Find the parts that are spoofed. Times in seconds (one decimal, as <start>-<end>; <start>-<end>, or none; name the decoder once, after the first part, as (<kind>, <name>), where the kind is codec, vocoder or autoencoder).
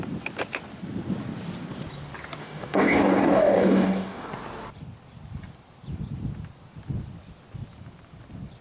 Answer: 2.4-4.3 (codec, DAC)